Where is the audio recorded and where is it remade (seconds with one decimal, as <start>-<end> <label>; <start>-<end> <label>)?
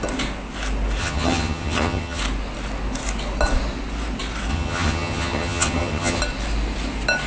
0.0-1.0 recorded; 1.0-2.2 remade; 2.2-4.5 recorded; 4.5-6.2 remade; 6.2-7.3 recorded